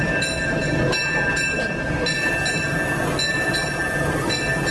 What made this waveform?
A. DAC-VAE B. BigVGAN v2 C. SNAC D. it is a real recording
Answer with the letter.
D